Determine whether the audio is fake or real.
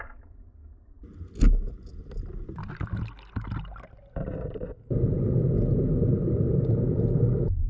real